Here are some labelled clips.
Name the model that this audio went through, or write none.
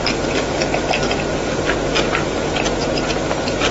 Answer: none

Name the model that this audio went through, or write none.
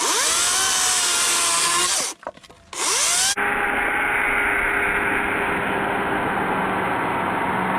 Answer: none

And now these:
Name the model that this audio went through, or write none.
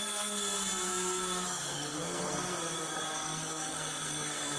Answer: codec, SNAC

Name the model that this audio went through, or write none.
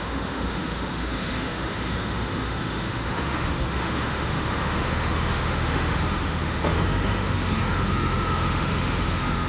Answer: autoencoder, DAC-VAE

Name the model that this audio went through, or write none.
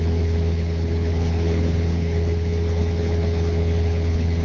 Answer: codec, HILCodec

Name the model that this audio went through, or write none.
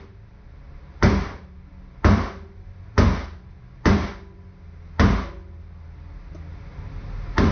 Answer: none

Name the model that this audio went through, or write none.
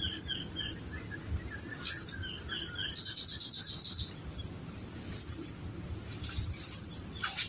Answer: none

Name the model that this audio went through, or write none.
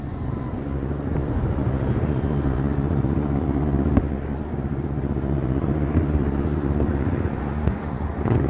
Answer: vocoder, Vocos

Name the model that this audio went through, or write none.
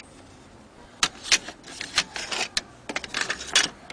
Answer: none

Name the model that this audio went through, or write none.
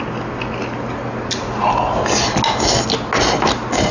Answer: none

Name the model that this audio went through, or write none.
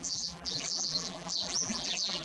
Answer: vocoder, BigVGAN v2